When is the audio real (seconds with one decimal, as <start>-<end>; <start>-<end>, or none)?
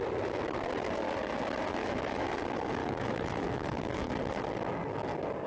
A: 0.0-1.8; 2.3-2.8; 4.2-5.5